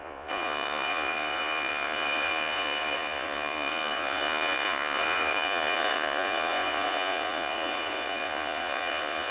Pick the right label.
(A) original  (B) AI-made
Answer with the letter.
B